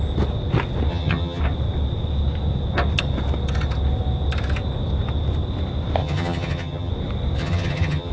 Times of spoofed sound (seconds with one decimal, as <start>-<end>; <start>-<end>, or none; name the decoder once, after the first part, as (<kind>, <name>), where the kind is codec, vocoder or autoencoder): 0.9-1.4 (vocoder, HiFi-GAN); 6.0-6.9; 7.4-8.1